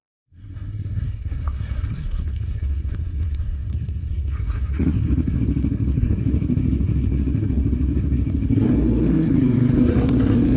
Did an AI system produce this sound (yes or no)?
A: yes